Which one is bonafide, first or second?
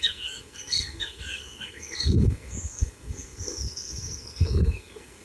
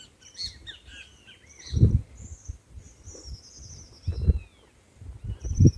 second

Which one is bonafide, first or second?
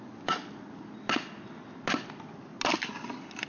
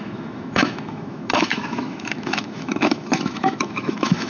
first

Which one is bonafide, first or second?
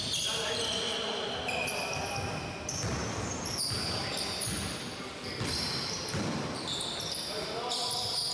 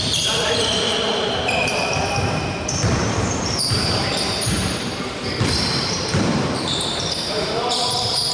first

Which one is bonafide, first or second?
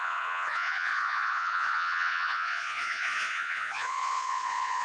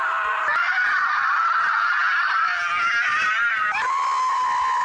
second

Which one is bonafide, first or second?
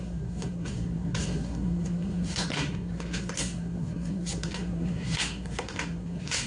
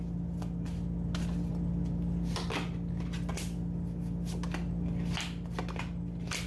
second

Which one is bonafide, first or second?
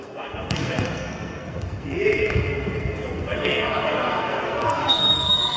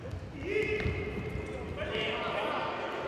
second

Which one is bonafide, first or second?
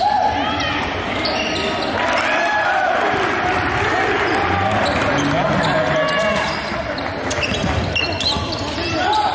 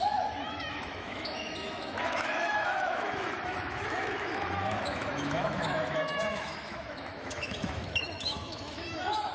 first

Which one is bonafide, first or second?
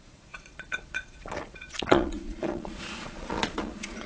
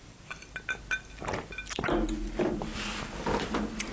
second